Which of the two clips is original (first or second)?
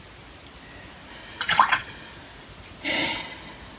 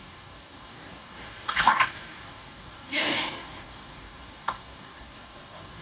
first